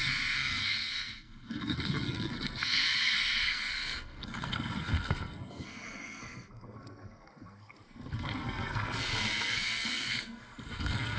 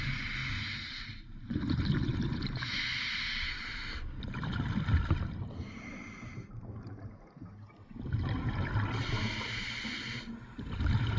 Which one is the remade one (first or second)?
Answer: first